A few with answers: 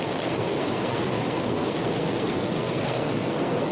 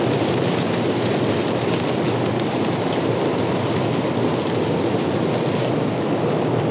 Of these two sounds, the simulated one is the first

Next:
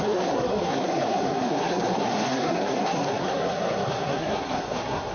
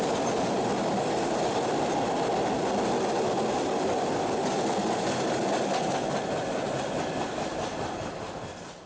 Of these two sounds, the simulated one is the first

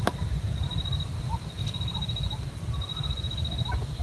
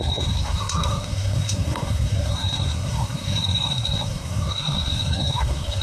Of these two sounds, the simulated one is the second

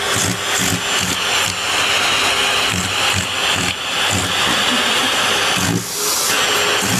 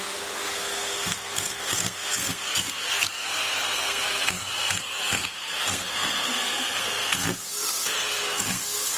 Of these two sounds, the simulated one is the second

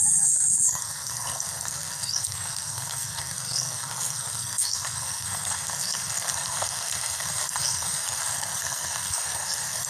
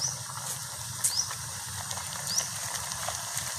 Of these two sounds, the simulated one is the first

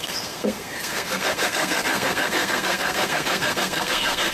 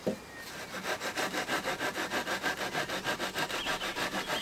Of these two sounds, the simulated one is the first